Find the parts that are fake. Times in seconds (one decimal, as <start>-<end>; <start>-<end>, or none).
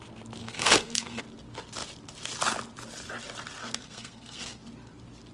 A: 0.4-1.2; 3.6-4.6